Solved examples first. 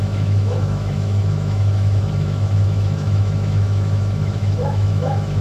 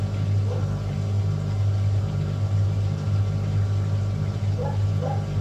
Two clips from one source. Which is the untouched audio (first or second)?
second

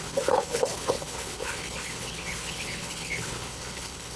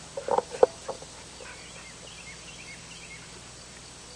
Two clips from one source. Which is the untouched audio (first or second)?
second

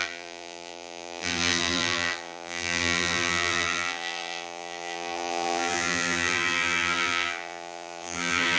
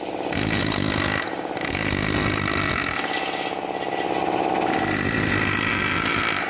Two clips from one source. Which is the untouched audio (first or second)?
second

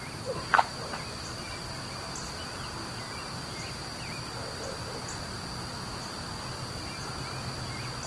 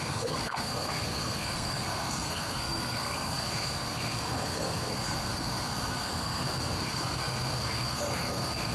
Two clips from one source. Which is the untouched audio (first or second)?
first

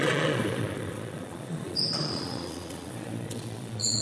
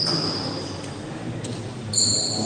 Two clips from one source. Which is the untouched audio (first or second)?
second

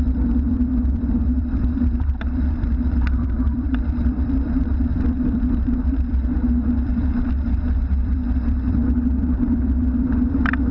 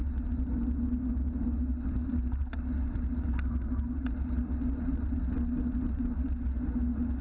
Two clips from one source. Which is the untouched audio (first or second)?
second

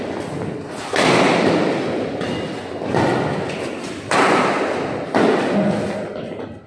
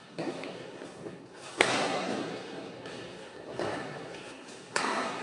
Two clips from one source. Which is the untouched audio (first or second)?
first